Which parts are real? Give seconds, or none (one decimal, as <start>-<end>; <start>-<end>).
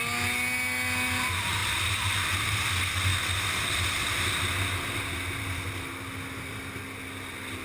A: 0.0-7.6